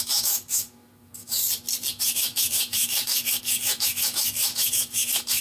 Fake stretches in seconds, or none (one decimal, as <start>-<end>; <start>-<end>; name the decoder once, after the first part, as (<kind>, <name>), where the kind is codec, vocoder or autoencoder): 0.0-1.4 (autoencoder, DAC-VAE); 1.9-5.4

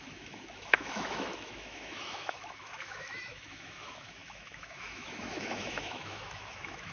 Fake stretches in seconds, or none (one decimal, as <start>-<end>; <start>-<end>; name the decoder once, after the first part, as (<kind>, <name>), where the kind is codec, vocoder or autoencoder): 0.0-6.9 (autoencoder, DAC-VAE)

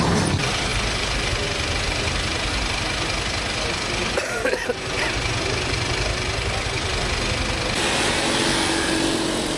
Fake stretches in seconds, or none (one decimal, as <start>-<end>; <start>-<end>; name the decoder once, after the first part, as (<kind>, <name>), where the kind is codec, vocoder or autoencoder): none

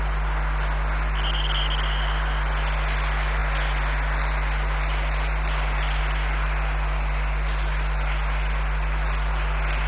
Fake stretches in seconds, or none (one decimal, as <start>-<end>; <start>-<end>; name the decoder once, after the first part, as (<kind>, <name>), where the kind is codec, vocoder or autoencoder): none

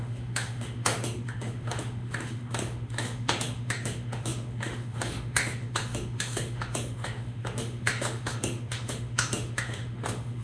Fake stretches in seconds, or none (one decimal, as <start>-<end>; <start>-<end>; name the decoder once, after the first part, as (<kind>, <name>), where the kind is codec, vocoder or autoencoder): 0.0-10.4 (autoencoder, DAC-VAE)

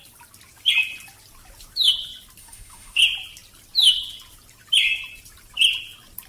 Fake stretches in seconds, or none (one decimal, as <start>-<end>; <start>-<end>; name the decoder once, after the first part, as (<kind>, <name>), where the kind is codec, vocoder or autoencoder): 2.4-3.0 (autoencoder, DAC-VAE)

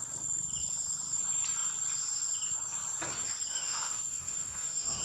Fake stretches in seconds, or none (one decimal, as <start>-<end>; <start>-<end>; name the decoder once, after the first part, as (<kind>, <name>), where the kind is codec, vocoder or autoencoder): 3.5-5.0 (autoencoder, DAC-VAE)